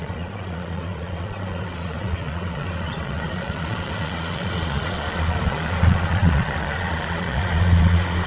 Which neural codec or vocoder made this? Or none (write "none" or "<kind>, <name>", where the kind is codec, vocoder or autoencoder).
vocoder, Vocos